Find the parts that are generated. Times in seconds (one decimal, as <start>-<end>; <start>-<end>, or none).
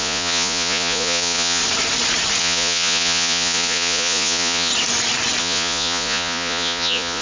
0.0-1.6; 2.4-4.7; 5.4-7.2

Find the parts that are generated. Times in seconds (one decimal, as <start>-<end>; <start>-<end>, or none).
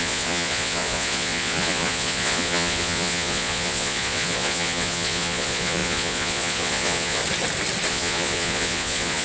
0.0-7.2; 7.9-9.2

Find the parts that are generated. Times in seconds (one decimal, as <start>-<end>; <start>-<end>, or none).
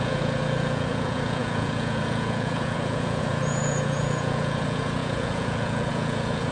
0.0-6.5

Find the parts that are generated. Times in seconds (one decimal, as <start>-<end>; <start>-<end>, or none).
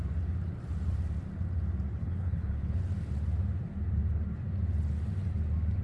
2.0-2.8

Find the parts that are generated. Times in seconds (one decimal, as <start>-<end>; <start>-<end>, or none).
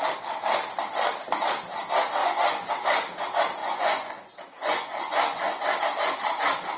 2.2-2.7; 3.6-5.8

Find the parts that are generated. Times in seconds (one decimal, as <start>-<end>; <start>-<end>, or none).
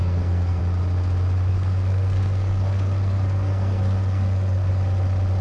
0.0-0.6; 1.5-4.7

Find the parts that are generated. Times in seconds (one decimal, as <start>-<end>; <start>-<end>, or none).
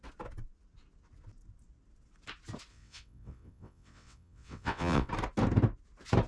2.7-5.1